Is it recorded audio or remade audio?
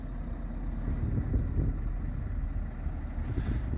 recorded